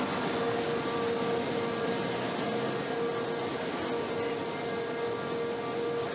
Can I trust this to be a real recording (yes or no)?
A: yes